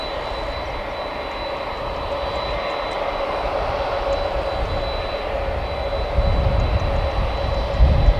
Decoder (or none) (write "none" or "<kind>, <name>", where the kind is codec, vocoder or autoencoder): none